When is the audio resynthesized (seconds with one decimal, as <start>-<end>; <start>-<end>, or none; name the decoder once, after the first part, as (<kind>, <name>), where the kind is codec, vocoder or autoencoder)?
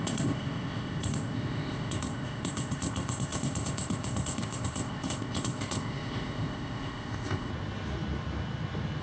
0.0-7.5 (codec, ZipCodec)